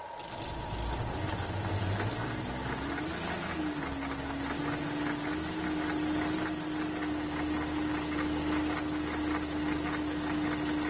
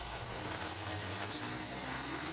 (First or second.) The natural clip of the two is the first